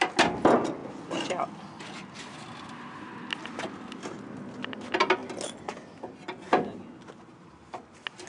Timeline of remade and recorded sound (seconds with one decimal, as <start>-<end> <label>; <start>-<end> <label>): 0.0-8.3 recorded